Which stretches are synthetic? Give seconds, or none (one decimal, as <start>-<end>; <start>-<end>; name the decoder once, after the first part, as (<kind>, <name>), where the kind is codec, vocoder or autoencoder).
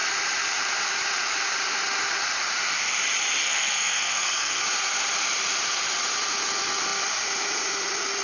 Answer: 3.4-4.6 (codec, SNAC)